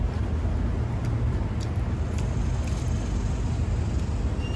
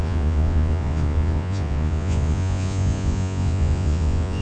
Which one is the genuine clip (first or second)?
first